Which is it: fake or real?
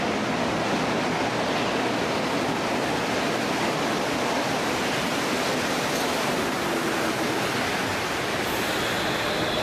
real